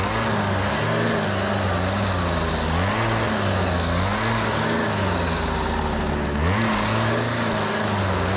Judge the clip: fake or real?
real